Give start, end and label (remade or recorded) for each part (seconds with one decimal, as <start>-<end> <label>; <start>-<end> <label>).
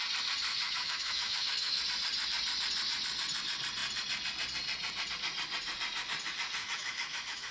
0.0-0.5 recorded; 0.5-1.8 remade; 1.8-6.6 recorded; 6.6-7.5 remade